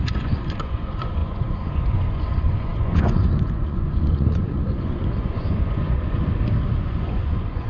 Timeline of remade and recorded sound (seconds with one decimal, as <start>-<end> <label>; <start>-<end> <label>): 0.0-6.2 remade; 6.2-6.8 recorded; 6.8-7.7 remade